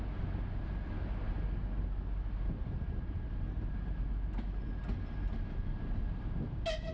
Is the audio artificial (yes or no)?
no